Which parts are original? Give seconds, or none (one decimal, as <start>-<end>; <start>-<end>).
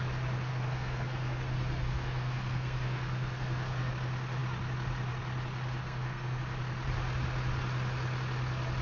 0.0-0.5; 3.9-5.8; 6.4-8.8